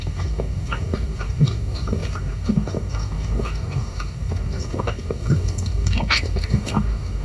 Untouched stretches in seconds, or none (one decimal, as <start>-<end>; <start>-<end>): none

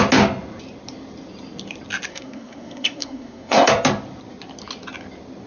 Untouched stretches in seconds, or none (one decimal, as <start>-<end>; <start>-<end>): 0.0-2.1; 3.7-5.5

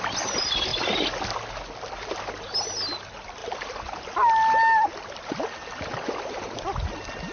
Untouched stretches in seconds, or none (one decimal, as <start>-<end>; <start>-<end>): 0.0-7.3

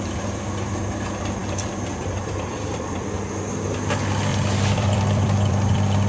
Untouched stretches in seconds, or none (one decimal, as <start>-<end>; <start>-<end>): 0.0-1.4; 3.4-4.3

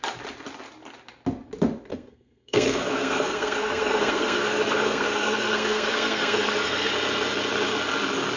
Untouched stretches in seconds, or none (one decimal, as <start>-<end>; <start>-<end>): 0.0-1.9; 6.9-8.4

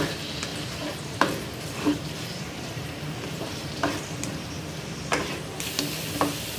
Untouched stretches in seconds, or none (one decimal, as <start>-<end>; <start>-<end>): 0.0-0.5; 4.5-5.1; 5.7-6.6

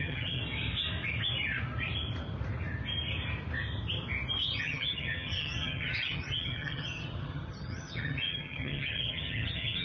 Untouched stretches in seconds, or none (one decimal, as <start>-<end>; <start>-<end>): 0.4-4.6

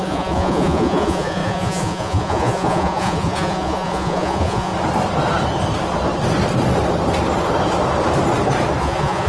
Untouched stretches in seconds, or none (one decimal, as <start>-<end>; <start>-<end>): 4.7-8.8